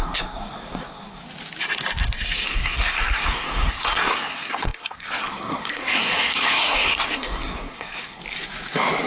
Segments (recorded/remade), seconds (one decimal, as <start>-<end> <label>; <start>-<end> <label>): 0.0-1.2 remade; 1.2-2.5 recorded; 2.5-8.2 remade; 8.2-9.1 recorded